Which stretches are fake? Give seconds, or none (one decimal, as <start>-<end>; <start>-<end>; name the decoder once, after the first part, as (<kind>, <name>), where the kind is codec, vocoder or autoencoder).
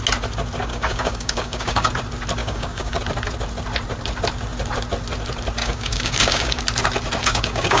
0.7-1.9 (codec, DAC); 2.4-3.0; 5.6-6.6; 7.2-7.8